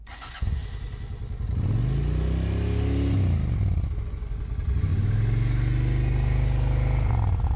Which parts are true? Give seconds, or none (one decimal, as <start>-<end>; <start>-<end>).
0.6-4.1; 4.9-7.6

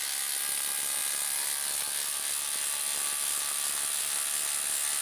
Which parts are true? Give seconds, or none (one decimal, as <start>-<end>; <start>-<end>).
0.0-5.0

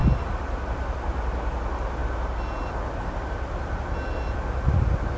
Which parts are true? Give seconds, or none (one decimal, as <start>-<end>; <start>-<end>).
0.0-5.2

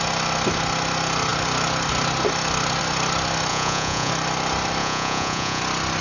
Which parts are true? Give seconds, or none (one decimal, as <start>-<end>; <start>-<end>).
0.0-3.5; 4.1-4.8; 5.6-6.0

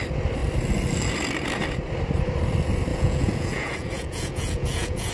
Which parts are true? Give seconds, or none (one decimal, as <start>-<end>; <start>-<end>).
0.0-2.9